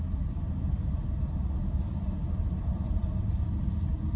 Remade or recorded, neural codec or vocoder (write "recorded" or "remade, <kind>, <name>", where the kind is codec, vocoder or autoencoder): recorded